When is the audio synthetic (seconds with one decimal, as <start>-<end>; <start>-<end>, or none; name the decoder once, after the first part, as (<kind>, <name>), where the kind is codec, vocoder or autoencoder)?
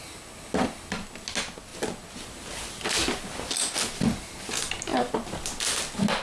none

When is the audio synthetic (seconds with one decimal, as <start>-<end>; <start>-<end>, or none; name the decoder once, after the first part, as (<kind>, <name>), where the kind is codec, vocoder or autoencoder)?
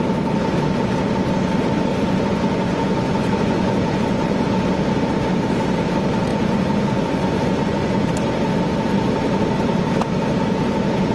1.9-4.5 (vocoder, Vocos); 6.3-8.1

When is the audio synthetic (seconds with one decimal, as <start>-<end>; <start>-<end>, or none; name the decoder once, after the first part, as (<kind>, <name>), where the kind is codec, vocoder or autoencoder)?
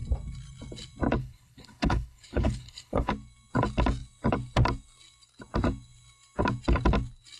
1.2-3.1 (codec, HILCodec)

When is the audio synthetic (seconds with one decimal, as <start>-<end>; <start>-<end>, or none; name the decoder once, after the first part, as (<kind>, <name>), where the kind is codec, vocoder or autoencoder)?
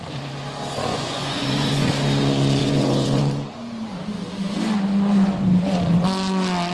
0.9-1.9 (vocoder, Vocos); 2.6-3.2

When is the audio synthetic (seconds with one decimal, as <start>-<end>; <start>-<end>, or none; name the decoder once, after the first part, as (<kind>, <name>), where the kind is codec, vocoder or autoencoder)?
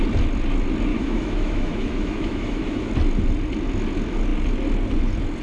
0.9-2.9 (autoencoder, DAC-VAE)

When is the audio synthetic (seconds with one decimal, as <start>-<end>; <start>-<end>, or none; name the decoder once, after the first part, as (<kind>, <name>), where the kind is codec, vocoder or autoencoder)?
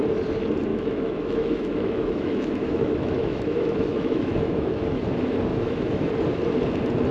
0.7-5.0 (autoencoder, DAC-VAE); 5.5-6.1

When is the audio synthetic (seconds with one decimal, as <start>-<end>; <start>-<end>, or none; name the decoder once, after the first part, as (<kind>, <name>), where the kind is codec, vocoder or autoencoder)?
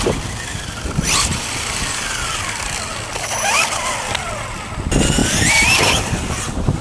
none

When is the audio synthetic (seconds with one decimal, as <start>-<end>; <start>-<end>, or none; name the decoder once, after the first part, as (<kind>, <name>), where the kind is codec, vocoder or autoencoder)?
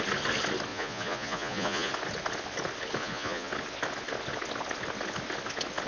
0.7-1.9 (vocoder, Vocos); 3.0-3.5